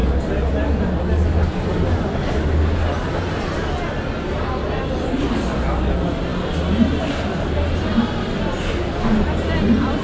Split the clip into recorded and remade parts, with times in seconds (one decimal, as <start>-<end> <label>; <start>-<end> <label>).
0.0-10.0 recorded